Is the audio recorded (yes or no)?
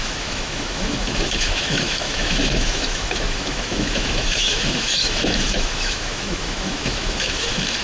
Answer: no